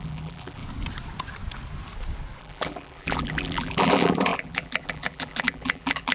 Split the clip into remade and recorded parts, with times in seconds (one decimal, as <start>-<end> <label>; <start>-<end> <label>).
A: 0.0-0.6 remade; 0.6-2.4 recorded; 2.4-6.1 remade